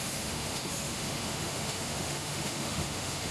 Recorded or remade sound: remade